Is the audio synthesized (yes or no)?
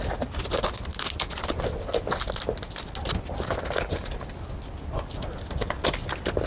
no